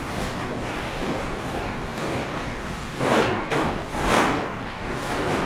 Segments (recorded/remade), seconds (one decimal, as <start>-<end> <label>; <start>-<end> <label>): 0.0-5.5 remade